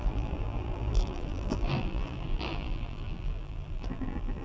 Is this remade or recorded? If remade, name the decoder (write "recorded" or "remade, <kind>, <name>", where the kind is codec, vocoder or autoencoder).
remade, vocoder, BigVGAN v2